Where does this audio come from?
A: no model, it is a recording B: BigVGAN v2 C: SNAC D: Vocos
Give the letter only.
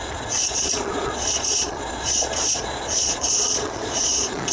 D